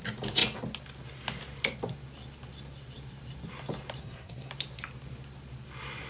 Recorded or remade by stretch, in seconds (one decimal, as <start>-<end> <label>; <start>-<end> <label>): 0.0-4.0 recorded; 4.0-4.5 remade; 4.5-6.1 recorded